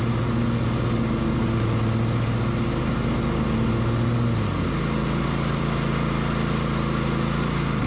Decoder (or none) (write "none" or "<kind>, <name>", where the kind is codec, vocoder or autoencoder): none